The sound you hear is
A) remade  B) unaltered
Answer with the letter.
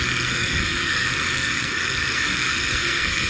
A